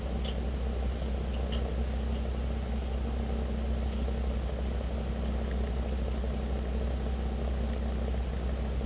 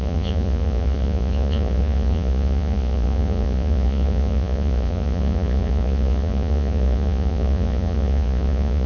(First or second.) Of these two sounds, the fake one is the second